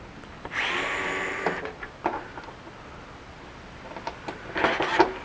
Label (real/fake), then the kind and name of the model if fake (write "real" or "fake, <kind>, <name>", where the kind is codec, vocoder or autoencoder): real